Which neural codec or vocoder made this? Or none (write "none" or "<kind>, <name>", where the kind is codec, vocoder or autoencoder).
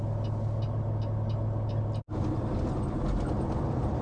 none